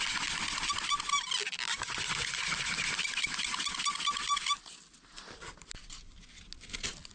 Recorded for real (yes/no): yes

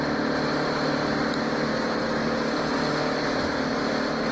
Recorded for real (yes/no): yes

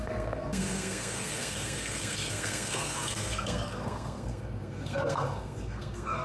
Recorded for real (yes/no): no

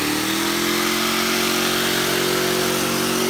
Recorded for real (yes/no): yes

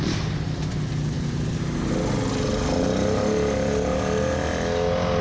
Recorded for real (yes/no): yes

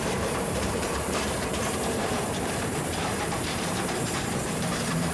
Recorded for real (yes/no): no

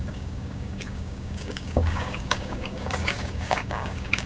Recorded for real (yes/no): no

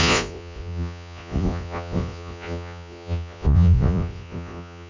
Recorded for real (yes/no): no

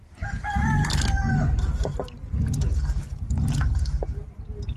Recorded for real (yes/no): yes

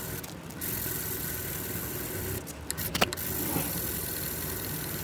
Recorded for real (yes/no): yes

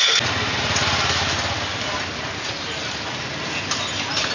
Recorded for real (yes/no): yes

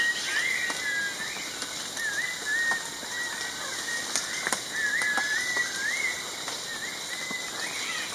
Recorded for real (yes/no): yes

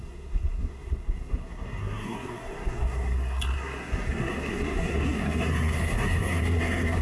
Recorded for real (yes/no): no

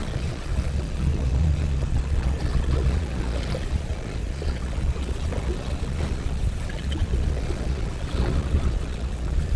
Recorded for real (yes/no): no